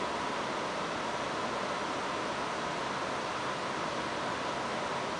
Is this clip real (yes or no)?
yes